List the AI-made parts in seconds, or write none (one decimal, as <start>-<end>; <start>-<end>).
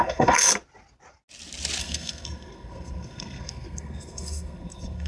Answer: 0.0-0.5; 1.8-5.1